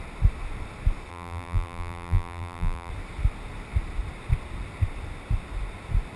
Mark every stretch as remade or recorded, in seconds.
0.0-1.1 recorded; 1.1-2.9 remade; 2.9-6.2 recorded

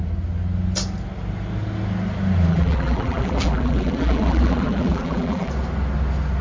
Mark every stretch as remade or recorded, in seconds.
0.0-2.5 recorded; 2.5-5.5 remade; 5.5-6.4 recorded